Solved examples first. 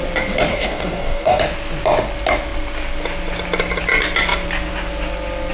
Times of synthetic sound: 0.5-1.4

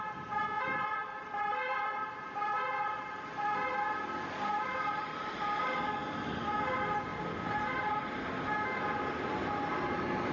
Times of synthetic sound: none

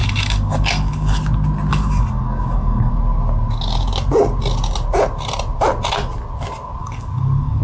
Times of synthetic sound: 0.0-1.2; 1.7-2.9; 6.8-7.6

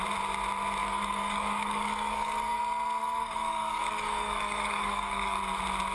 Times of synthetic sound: 0.8-2.6; 3.0-5.4

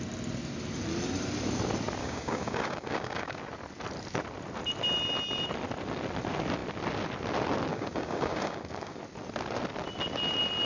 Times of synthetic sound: 2.0-3.4; 7.7-9.0

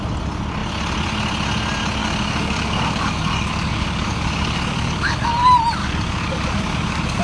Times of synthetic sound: 2.0-5.3; 5.8-7.2